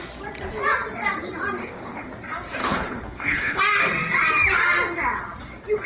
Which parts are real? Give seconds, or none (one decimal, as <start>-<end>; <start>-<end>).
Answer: 0.0-1.6; 2.1-2.6; 3.6-5.9